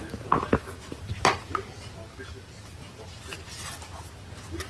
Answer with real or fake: real